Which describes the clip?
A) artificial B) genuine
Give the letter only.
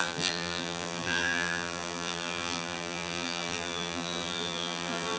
A